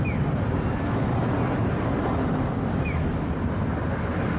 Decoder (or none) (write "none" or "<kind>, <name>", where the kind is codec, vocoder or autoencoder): none